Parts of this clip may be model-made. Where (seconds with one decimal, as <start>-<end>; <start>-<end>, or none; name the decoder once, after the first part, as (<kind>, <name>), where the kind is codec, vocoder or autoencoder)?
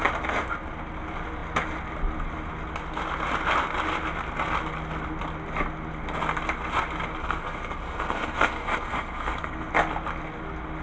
7.2-9.7 (codec, SNAC)